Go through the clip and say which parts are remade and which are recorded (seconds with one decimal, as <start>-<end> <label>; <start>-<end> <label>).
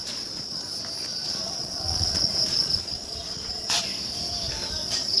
0.0-0.6 remade; 0.6-1.1 recorded; 1.1-3.8 remade; 3.8-5.2 recorded